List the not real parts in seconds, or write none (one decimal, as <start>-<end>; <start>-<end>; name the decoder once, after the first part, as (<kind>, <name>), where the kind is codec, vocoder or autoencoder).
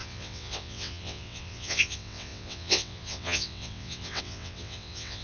0.0-5.2 (vocoder, WaveNeXt)